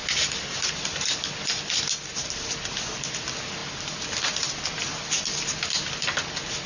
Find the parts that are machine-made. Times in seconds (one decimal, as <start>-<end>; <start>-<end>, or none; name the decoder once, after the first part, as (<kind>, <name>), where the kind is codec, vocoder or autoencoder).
3.6-4.6 (vocoder, BigVGAN v2)